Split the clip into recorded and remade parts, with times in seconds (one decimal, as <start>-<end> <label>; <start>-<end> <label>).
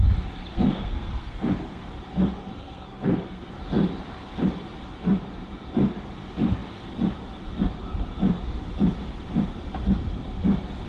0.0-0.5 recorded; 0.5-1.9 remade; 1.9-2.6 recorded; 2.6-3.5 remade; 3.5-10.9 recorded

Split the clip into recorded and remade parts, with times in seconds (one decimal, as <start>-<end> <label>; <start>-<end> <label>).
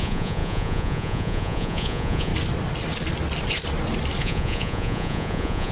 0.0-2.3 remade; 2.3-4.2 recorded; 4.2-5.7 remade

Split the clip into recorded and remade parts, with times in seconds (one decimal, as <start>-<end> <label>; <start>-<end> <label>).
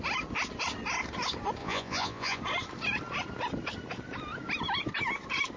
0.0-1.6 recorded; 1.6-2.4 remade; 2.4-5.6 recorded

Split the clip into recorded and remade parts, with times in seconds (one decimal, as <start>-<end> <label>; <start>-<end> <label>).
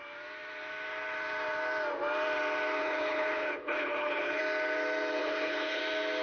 0.0-2.8 recorded; 2.8-4.4 remade; 4.4-5.2 recorded; 5.2-5.8 remade; 5.8-6.2 recorded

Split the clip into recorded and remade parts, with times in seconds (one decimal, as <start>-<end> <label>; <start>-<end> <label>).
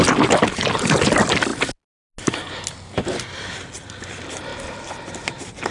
0.0-1.5 remade; 1.5-3.0 recorded; 3.0-4.5 remade; 4.5-5.1 recorded; 5.1-5.7 remade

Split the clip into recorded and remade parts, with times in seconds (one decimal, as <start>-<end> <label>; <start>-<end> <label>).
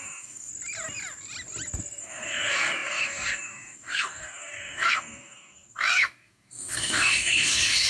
0.0-0.5 remade; 0.5-2.0 recorded; 2.0-7.9 remade